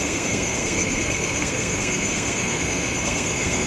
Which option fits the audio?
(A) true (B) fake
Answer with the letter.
B